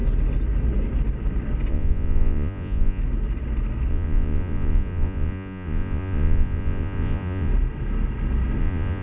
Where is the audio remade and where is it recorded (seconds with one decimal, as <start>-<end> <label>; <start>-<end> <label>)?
0.0-1.7 recorded; 1.7-3.0 remade; 3.0-3.9 recorded; 3.9-7.5 remade; 7.5-8.6 recorded; 8.6-9.0 remade